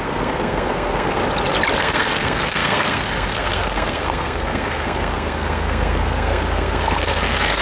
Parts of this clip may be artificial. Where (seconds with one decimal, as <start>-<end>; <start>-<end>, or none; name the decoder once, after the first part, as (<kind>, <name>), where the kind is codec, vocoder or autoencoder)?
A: 0.0-1.2 (codec, SNAC); 1.8-7.6